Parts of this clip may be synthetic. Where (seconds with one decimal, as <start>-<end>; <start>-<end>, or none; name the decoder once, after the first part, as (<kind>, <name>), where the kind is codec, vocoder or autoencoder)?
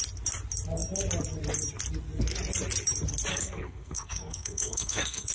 3.3-5.3 (codec, SNAC)